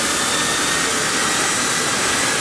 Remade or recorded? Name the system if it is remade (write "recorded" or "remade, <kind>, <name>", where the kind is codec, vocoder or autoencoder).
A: recorded